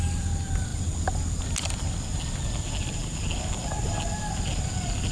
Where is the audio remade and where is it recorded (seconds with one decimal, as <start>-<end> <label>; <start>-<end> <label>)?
0.0-5.1 recorded